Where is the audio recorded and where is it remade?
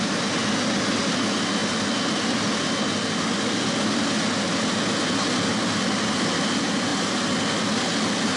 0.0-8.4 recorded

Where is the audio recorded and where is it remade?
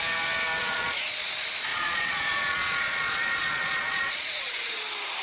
0.0-0.6 recorded; 0.6-1.1 remade; 1.1-1.7 recorded; 1.7-4.8 remade; 4.8-5.2 recorded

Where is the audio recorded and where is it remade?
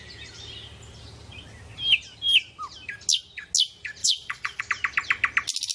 0.0-4.0 recorded; 4.0-4.6 remade; 4.6-5.7 recorded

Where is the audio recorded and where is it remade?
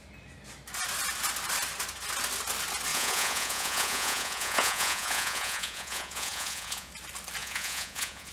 0.0-2.9 recorded; 2.9-6.9 remade; 6.9-7.4 recorded; 7.4-8.3 remade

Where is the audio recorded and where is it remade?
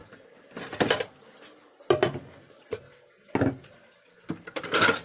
0.0-5.0 recorded